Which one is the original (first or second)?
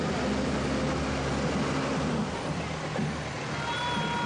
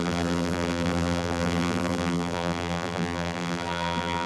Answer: first